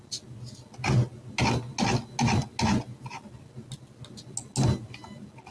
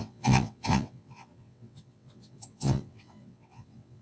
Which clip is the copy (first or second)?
second